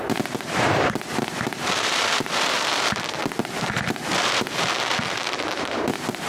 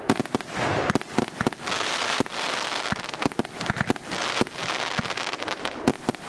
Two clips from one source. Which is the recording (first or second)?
second